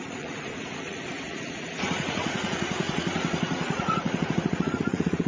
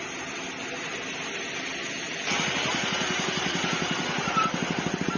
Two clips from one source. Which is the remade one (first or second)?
first